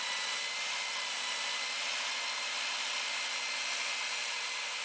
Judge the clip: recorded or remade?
recorded